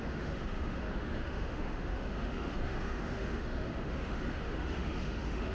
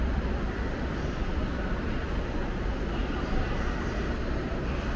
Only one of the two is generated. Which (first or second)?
first